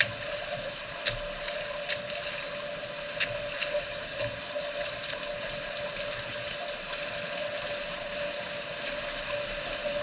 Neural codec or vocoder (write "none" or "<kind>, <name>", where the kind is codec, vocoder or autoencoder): none